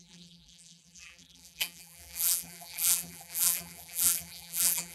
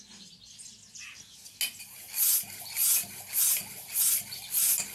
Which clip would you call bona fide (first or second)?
second